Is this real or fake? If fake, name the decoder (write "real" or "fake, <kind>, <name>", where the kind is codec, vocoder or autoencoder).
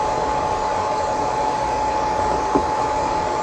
fake, codec, DAC